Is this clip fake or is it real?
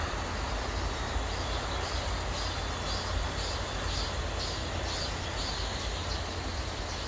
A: real